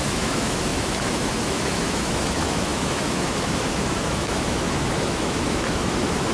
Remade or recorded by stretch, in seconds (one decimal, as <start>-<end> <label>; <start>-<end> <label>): 0.0-6.3 remade